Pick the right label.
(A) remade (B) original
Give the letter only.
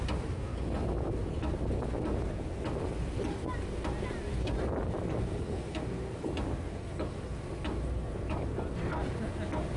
B